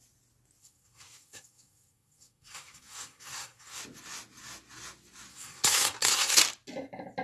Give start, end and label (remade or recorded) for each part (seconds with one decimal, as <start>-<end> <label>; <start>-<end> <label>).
0.0-0.6 recorded; 0.6-3.8 remade; 3.8-5.3 recorded; 5.3-6.4 remade; 6.4-7.2 recorded